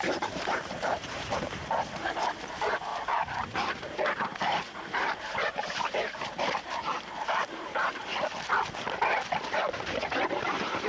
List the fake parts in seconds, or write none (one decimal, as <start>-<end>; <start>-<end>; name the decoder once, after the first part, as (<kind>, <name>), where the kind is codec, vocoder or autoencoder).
0.0-8.1 (vocoder, BigVGAN v2); 9.6-10.9